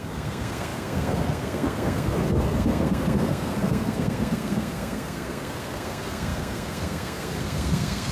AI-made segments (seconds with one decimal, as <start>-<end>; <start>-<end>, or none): 0.0-8.1